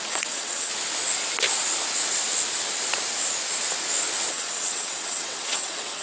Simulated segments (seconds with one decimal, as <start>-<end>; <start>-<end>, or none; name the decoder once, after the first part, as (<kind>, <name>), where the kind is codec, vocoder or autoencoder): 0.0-0.7 (vocoder, WaveNeXt); 4.3-6.0